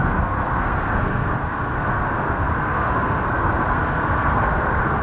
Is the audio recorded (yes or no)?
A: no